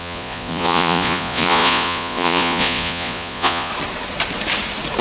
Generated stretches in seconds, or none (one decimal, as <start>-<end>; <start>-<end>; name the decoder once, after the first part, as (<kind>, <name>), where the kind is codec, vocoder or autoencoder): 0.0-3.7 (vocoder, Vocos)